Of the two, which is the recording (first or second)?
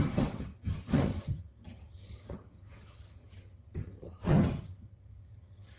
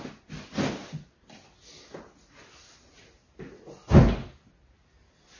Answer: second